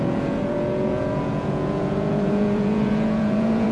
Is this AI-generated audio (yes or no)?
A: yes